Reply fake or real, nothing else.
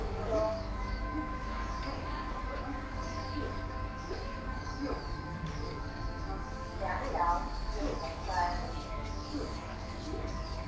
fake